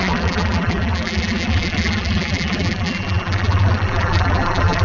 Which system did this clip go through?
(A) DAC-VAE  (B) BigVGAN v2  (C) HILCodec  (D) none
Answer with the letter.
B